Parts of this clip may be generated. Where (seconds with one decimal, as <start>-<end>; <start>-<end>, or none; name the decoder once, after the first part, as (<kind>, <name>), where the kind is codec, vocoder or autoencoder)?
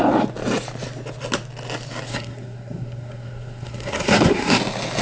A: 2.1-4.6 (codec, SNAC)